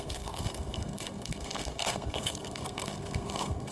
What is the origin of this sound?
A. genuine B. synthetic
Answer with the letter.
B